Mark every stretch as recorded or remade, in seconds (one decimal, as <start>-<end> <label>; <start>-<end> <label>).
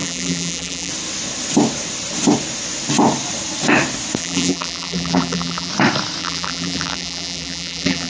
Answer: 0.0-0.9 remade; 0.9-4.2 recorded; 4.2-5.7 remade; 5.7-6.2 recorded; 6.2-8.1 remade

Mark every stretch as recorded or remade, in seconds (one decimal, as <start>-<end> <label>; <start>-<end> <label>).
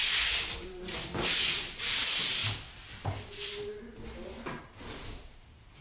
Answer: 0.0-0.6 recorded; 0.6-1.1 remade; 1.1-1.7 recorded; 1.7-2.4 remade; 2.4-4.8 recorded; 4.8-5.8 remade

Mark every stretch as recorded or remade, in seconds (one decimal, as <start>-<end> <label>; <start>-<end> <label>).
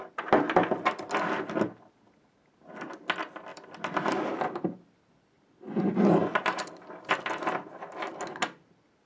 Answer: 0.0-3.5 recorded; 3.5-7.5 remade; 7.5-9.1 recorded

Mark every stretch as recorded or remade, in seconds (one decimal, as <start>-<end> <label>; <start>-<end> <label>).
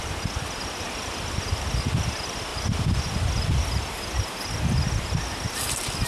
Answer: 0.0-6.1 recorded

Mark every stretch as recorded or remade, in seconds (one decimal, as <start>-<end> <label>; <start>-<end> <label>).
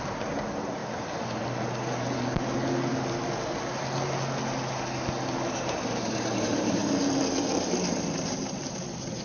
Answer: 0.0-0.8 remade; 0.8-5.5 recorded; 5.5-6.8 remade; 6.8-7.8 recorded; 7.8-9.2 remade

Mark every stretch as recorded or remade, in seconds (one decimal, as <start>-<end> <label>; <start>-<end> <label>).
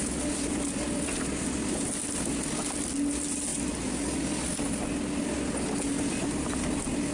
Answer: 0.0-7.1 recorded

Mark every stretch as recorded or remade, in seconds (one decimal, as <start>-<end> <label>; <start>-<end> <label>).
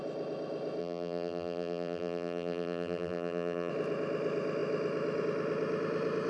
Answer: 0.0-0.8 recorded; 0.8-3.7 remade; 3.7-6.3 recorded